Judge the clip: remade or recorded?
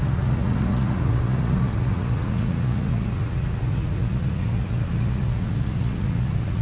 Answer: remade